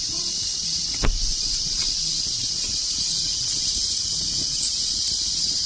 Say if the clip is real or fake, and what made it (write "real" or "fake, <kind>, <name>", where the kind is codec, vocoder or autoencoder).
fake, vocoder, Vocos